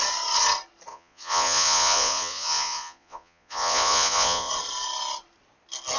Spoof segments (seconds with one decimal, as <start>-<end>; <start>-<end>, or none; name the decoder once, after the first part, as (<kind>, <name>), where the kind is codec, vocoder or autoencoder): 0.9-4.5 (vocoder, Vocos)